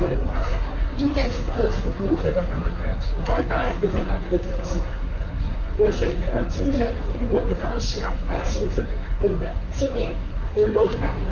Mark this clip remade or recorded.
remade